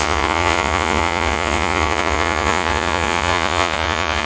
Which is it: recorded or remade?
remade